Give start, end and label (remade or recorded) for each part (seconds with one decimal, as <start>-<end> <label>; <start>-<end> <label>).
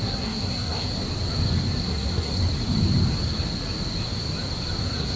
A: 0.0-0.9 remade; 0.9-1.8 recorded; 1.8-2.4 remade; 2.4-4.8 recorded; 4.8-5.2 remade